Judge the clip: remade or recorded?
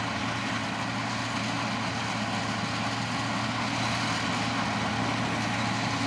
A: recorded